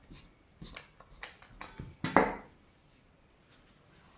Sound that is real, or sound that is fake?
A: real